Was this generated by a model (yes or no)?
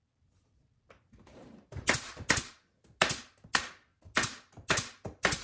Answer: no